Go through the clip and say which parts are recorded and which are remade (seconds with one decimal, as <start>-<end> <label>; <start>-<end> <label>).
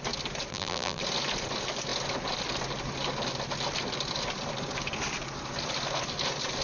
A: 0.0-0.5 recorded; 0.5-1.0 remade; 1.0-6.6 recorded